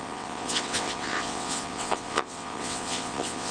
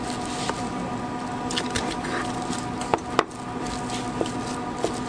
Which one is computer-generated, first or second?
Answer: first